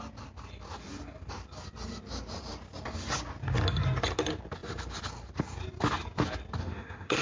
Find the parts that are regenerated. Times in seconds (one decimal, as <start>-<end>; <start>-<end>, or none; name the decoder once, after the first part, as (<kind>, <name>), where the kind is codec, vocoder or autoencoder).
6.6-7.2 (autoencoder, DAC-VAE)